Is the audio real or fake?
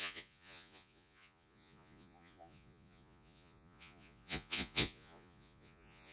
fake